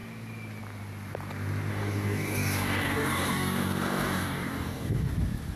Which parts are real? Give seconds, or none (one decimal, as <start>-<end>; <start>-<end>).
0.0-1.7; 5.1-5.6